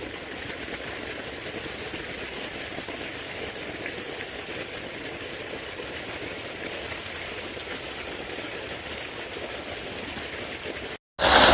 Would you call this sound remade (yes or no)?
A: no